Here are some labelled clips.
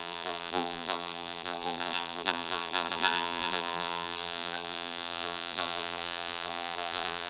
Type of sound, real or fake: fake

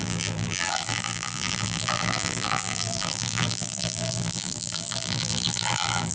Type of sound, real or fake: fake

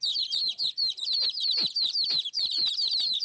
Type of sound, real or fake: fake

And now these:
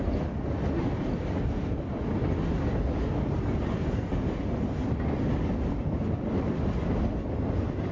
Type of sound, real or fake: real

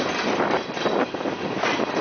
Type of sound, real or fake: fake